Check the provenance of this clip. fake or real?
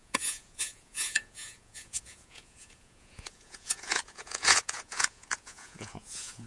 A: fake